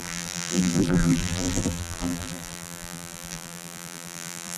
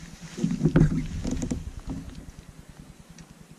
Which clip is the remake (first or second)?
first